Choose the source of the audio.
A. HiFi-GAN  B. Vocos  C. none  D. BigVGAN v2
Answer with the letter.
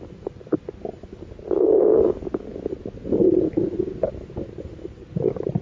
C